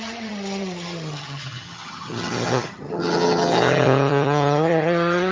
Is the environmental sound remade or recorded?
remade